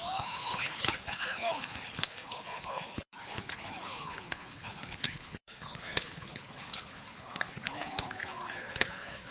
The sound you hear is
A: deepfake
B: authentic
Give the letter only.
A